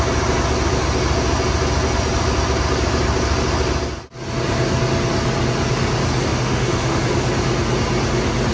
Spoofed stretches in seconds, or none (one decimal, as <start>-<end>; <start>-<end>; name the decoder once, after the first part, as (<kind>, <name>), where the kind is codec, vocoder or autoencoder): 6.3-7.0 (autoencoder, DAC-VAE)